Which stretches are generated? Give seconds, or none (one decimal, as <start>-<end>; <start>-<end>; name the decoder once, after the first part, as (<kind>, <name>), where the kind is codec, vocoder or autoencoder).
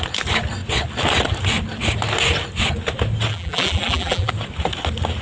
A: 3.3-4.3 (vocoder, BigVGAN v2)